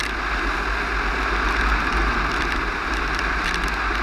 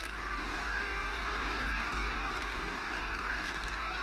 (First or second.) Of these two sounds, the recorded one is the first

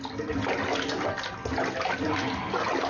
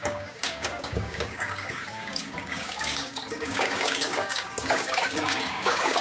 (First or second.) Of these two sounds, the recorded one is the first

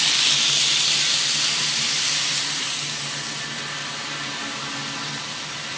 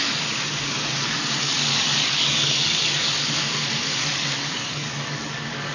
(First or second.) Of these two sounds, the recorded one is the first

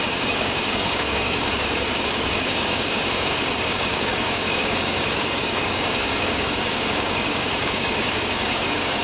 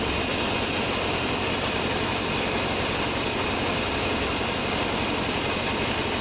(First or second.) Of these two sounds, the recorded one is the second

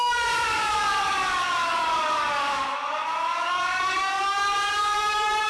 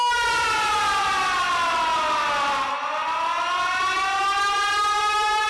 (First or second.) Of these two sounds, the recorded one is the second